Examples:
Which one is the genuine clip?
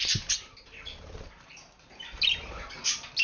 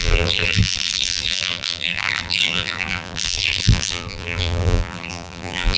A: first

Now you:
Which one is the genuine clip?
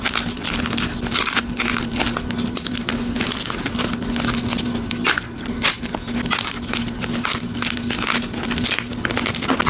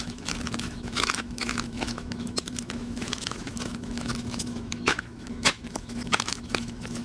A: first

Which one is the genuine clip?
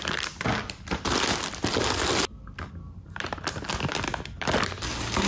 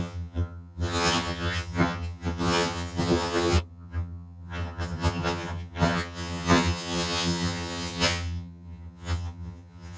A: first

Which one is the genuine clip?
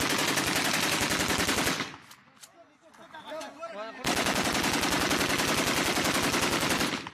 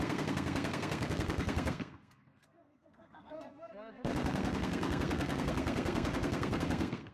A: first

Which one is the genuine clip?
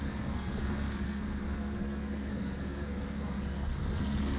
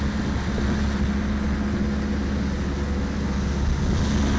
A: second